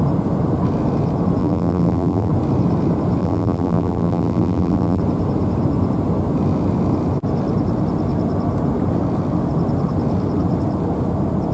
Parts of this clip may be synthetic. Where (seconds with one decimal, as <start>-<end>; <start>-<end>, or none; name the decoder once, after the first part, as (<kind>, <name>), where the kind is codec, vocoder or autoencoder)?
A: 1.4-2.3 (vocoder, BigVGAN v2); 3.2-5.0